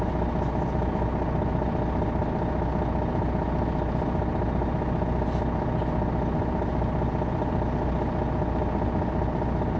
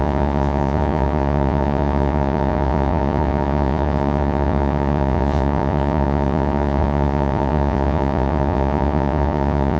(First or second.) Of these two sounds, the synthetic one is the second